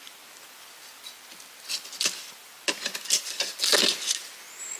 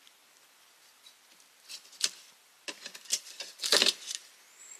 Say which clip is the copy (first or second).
second